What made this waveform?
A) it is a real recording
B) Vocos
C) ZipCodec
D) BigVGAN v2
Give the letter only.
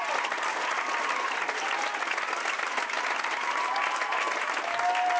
A